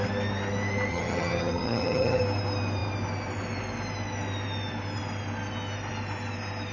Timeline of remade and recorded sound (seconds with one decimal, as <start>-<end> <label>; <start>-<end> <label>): 0.0-0.9 recorded; 0.9-2.2 remade; 2.2-6.7 recorded